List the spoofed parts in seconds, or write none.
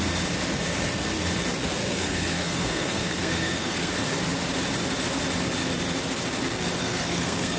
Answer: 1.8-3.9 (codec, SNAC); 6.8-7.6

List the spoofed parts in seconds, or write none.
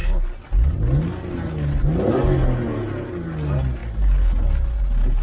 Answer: none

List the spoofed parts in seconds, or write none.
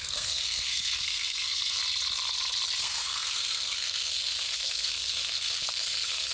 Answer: 0.0-1.8 (codec, SNAC); 2.8-6.3